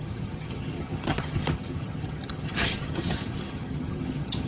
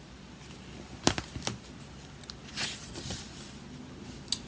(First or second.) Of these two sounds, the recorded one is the second